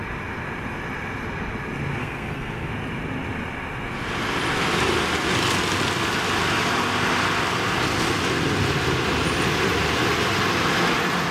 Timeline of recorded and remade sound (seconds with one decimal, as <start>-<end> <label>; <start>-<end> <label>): 0.0-2.0 recorded; 2.0-2.7 remade; 2.7-11.3 recorded